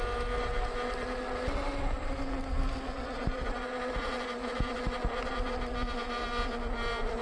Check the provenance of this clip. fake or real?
real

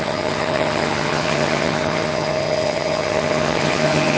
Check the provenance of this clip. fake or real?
fake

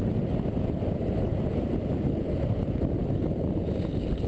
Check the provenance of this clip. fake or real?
real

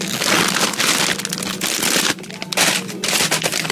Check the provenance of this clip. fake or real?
real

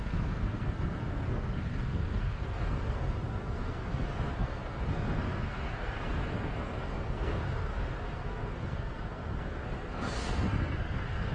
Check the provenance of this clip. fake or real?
fake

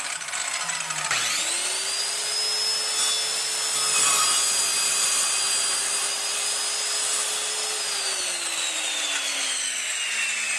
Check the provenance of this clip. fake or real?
real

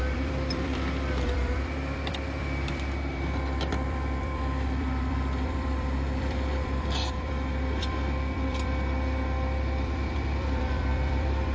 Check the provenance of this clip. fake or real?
fake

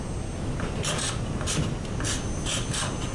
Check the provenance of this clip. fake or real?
real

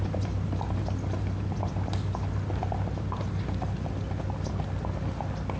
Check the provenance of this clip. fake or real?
real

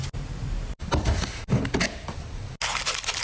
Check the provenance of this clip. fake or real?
real